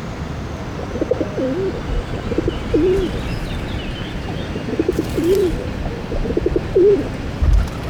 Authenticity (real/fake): fake